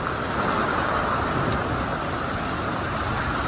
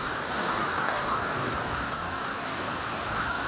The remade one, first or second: second